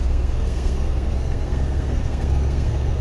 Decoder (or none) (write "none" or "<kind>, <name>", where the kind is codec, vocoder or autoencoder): codec, SNAC